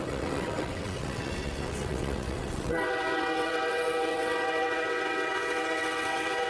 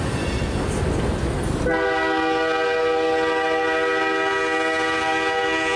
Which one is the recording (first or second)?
second